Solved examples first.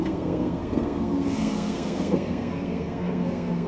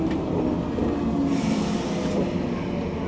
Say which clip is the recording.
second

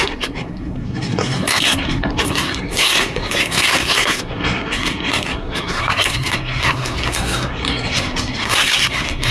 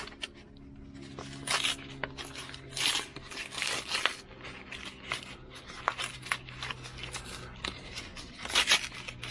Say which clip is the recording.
second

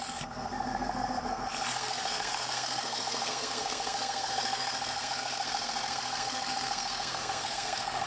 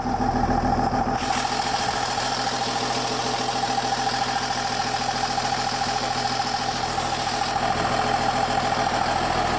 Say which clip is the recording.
second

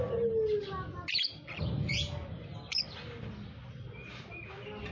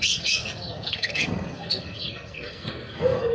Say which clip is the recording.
first